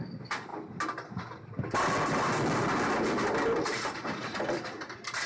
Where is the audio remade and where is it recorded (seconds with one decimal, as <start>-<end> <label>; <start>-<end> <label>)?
0.0-3.7 recorded; 3.7-4.4 remade; 4.4-5.3 recorded